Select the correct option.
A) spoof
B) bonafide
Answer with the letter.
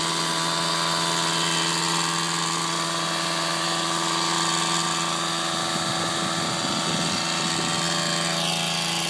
B